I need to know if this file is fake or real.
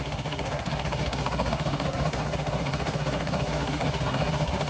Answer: fake